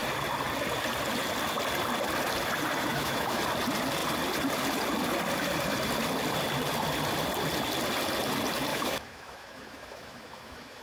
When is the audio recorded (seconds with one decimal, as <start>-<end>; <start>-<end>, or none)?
0.0-2.9; 3.4-8.7